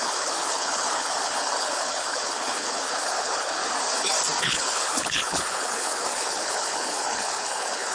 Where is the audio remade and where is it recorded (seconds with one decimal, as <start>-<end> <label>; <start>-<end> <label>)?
0.0-3.6 remade; 3.6-4.4 recorded; 4.4-7.9 remade